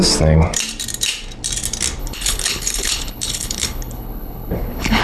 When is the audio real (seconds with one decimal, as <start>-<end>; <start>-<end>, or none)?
0.0-2.0